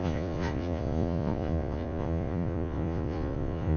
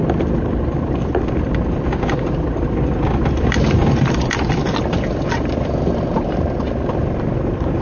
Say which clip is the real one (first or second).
second